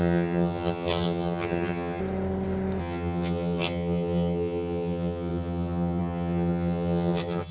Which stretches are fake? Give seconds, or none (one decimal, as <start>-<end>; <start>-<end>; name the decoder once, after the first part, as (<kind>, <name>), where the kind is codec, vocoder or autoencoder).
0.0-2.0 (vocoder, HiFi-GAN); 2.8-7.5